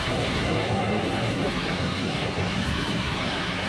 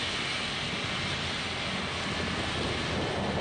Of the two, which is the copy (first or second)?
first